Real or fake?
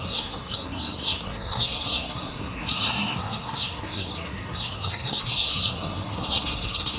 fake